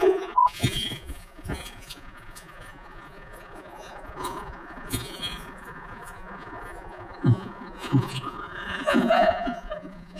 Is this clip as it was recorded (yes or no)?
no